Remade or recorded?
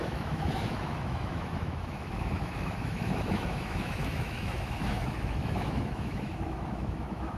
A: remade